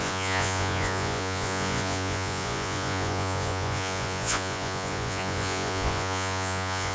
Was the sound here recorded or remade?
remade